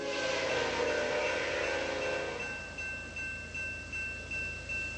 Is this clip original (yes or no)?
yes